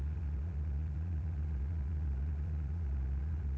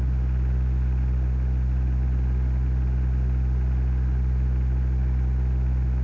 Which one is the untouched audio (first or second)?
second